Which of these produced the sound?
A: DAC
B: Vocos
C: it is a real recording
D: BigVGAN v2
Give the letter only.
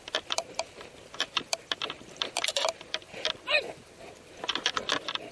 D